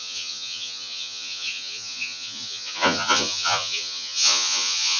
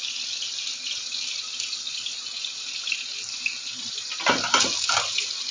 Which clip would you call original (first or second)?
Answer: second